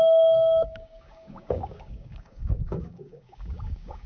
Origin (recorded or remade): remade